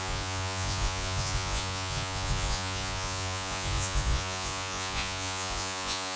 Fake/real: fake